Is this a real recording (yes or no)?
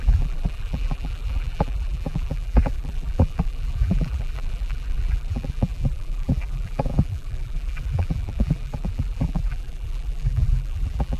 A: no